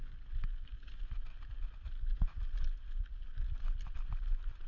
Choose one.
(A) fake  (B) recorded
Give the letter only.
B